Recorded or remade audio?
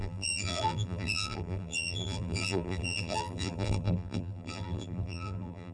remade